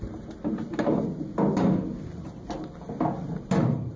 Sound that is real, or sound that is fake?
real